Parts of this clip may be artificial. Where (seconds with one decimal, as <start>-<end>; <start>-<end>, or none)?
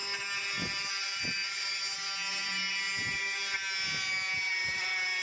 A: 0.9-1.4; 4.5-5.2